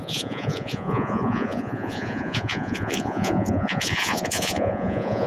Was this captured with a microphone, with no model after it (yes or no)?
no